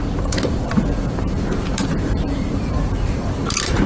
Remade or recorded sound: remade